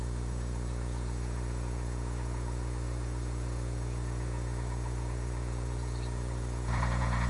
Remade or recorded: remade